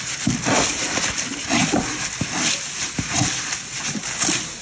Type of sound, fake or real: real